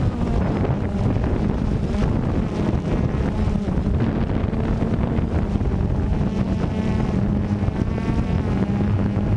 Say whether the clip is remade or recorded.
recorded